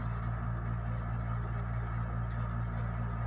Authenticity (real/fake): real